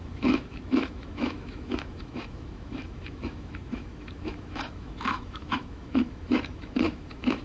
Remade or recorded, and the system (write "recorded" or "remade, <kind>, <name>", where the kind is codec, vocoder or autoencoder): remade, autoencoder, DAC-VAE